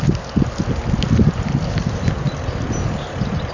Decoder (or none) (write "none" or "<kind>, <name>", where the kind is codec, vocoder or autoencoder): none